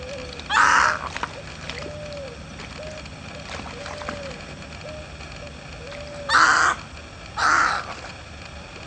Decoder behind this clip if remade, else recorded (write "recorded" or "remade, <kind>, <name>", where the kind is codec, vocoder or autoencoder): recorded